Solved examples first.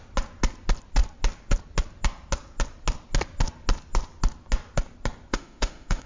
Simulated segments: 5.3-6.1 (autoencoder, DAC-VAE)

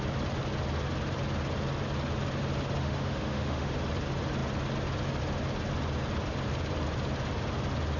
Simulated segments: 2.8-3.7 (autoencoder, DAC-VAE)

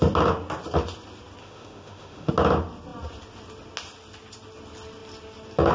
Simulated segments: 1.4-2.3 (autoencoder, DAC-VAE)

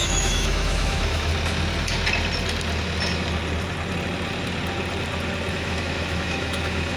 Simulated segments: 0.0-1.3 (autoencoder, DAC-VAE); 5.5-7.0